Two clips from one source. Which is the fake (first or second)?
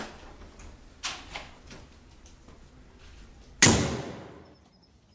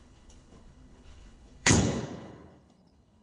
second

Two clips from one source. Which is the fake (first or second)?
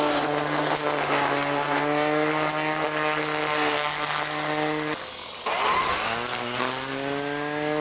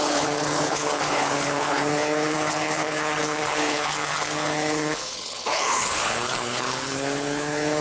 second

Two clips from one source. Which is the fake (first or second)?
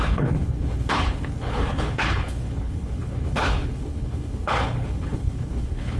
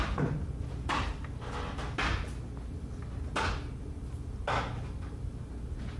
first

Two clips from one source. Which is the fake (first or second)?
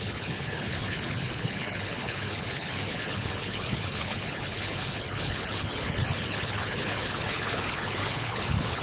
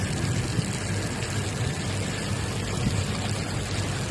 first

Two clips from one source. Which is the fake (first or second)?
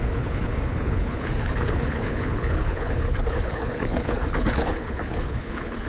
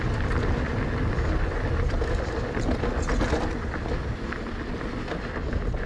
first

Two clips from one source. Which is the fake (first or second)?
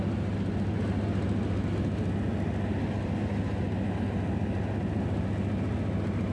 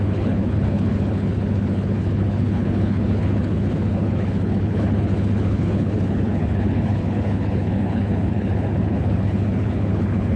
second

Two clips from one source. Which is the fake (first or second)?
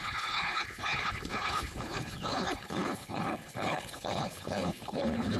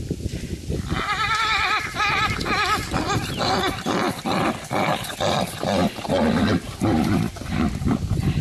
first